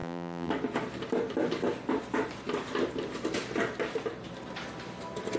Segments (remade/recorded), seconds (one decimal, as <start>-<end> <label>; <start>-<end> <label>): 0.0-0.5 remade; 0.5-5.4 recorded